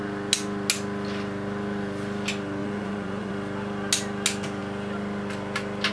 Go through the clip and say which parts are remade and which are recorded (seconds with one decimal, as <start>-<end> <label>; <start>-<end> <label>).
0.0-2.6 recorded; 2.6-3.3 remade; 3.3-5.9 recorded